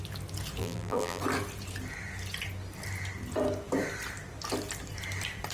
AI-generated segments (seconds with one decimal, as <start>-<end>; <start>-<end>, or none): 0.6-1.2